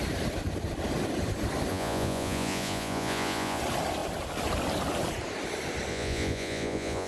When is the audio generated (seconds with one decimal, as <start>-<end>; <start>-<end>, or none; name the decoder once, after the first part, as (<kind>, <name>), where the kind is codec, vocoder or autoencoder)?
1.7-3.6 (vocoder, Vocos); 5.9-7.1